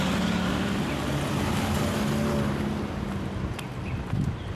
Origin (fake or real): real